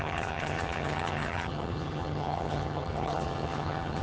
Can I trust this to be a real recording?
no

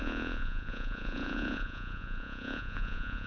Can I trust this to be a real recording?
no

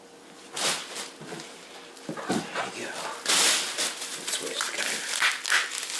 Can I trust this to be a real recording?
yes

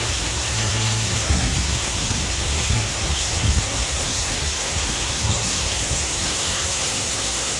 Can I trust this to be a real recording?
no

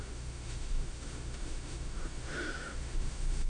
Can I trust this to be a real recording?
no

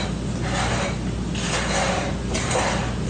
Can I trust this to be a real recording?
yes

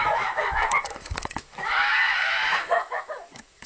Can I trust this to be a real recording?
no